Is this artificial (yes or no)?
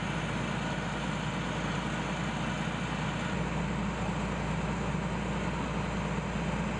no